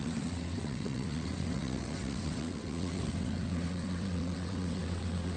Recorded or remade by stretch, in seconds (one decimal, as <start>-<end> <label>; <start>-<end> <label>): 0.0-5.4 remade